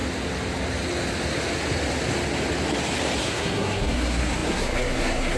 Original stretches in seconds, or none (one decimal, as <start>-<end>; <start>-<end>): 0.0-3.2